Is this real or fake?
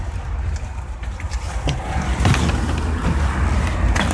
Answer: real